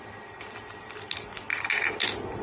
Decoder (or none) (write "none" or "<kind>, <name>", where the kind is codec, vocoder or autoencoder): none